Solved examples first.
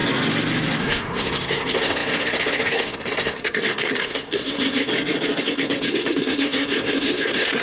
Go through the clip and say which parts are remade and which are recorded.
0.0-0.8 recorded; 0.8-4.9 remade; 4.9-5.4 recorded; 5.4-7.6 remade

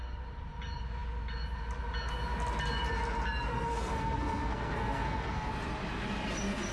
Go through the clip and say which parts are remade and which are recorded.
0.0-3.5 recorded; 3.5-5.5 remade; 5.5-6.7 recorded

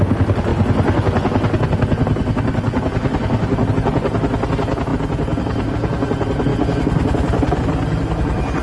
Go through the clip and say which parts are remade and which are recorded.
0.0-8.6 recorded

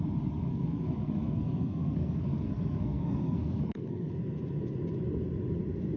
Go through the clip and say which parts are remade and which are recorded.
0.0-0.5 recorded; 0.5-4.1 remade; 4.1-6.0 recorded

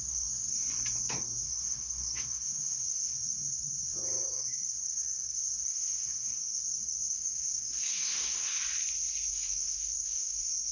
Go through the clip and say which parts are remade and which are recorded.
0.0-0.6 remade; 0.6-1.1 recorded; 1.1-8.6 remade; 8.6-9.3 recorded; 9.3-10.7 remade

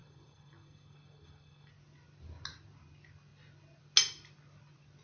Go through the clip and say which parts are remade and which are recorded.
0.0-1.7 remade; 1.7-5.0 recorded